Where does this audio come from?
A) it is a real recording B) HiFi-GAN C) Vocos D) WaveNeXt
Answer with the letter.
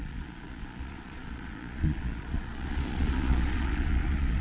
C